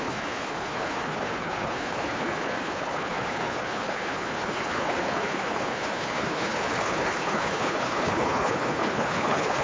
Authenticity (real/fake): fake